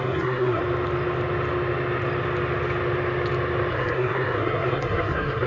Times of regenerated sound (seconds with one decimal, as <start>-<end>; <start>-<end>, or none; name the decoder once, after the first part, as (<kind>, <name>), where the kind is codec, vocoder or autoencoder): 0.0-0.6 (codec, SNAC); 3.7-5.5